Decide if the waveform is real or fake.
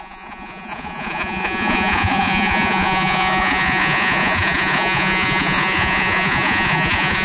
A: fake